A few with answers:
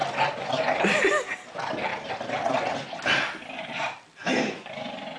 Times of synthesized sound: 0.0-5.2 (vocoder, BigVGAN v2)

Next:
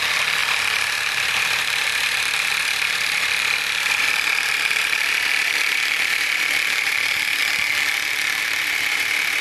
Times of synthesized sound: 0.0-7.4 (vocoder, BigVGAN v2); 8.4-9.4

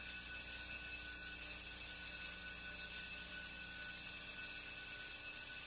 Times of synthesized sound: none

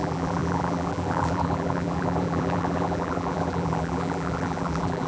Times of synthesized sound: 0.0-5.1 (vocoder, BigVGAN v2)

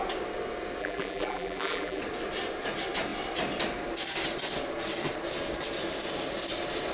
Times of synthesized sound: 0.8-2.0 (vocoder, BigVGAN v2)

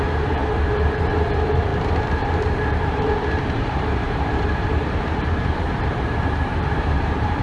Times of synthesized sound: 0.0-0.4 (vocoder, BigVGAN v2); 1.0-7.4

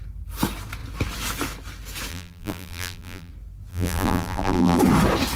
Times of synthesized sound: 2.1-3.3 (vocoder, BigVGAN v2); 3.7-4.8

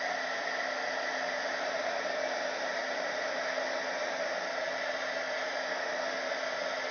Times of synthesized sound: none